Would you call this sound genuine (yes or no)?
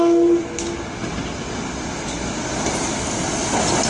yes